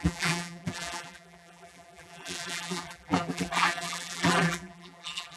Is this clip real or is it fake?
fake